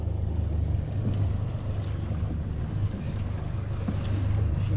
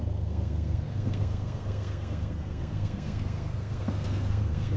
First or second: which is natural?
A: first